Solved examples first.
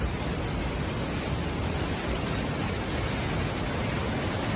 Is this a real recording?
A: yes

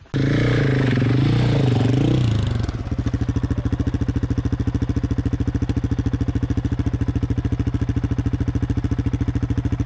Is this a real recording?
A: yes